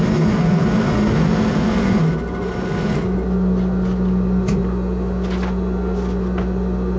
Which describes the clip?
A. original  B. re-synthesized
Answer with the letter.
A